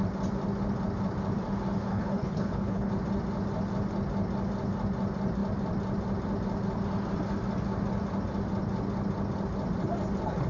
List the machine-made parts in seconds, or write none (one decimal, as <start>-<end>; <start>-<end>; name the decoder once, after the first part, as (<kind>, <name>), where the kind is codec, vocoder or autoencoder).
1.9-2.9 (codec, HILCodec)